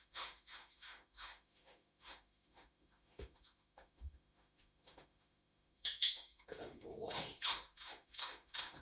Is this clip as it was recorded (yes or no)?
no